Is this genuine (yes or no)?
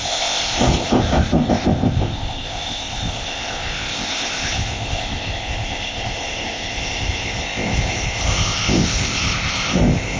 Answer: no